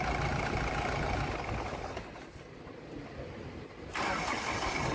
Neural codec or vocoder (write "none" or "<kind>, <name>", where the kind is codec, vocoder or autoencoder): none